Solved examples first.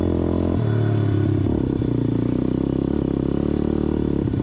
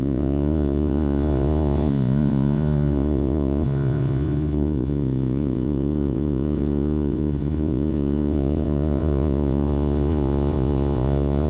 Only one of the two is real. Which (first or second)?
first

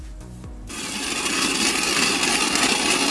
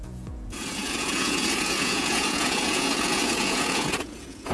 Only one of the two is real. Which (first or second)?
first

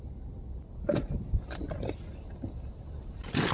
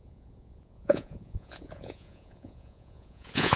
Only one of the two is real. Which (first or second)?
first